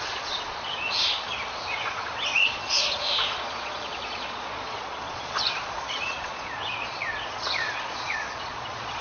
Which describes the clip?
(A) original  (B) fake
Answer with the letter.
B